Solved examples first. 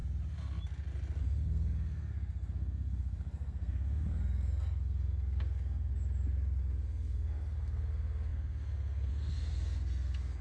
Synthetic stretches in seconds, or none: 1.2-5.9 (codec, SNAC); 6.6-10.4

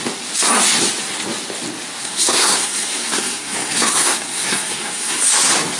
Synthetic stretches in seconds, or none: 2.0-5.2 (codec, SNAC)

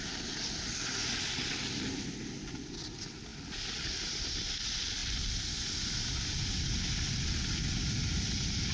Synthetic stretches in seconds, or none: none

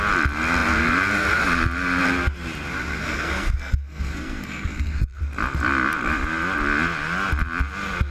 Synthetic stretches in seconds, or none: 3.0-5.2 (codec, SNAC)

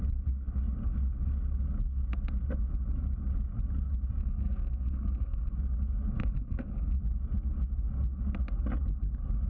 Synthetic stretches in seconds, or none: 4.2-5.5 (codec, SNAC); 6.2-7.0

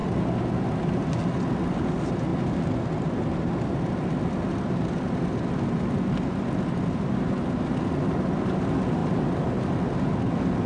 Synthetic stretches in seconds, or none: none

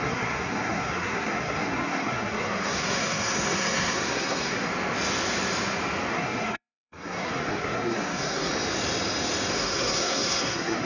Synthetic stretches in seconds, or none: 0.0-4.7 (codec, SNAC); 6.1-8.5; 9.5-10.8

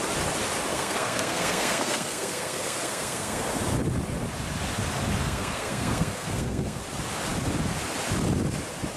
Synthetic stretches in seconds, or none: 0.7-3.5 (codec, SNAC); 5.2-6.8